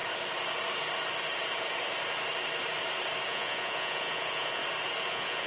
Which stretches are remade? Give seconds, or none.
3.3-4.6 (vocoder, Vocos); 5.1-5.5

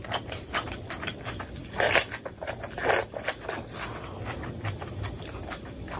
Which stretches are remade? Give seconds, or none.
none

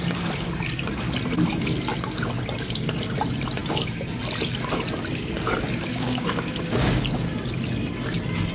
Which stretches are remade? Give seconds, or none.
5.9-7.3 (codec, DAC)

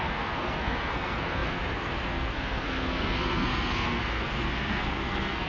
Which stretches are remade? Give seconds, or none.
0.0-5.5 (codec, SNAC)